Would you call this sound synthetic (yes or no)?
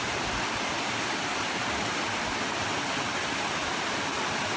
no